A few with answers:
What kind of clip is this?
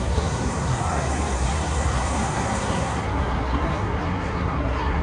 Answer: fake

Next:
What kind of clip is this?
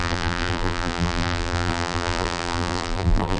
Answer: fake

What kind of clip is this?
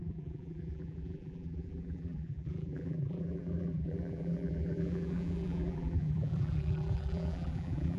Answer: fake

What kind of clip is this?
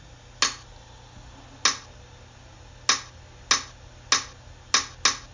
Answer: real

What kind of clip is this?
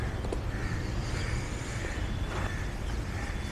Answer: real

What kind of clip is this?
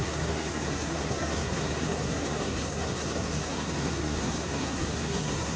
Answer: fake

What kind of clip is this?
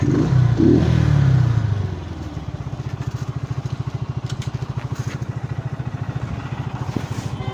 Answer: real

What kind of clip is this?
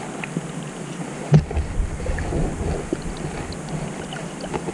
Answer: real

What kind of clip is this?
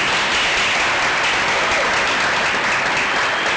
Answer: real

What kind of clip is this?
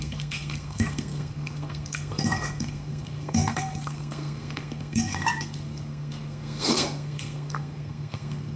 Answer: fake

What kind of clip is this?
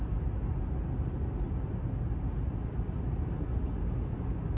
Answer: real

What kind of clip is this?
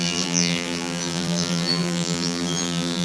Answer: fake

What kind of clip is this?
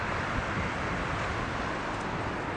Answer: real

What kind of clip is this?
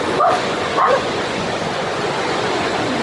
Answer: fake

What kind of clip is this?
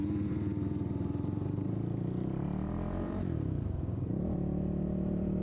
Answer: fake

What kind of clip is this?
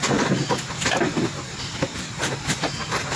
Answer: real